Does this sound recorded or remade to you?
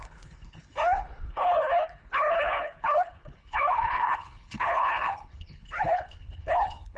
remade